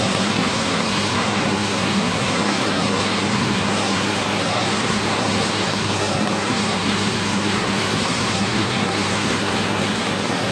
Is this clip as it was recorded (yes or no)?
no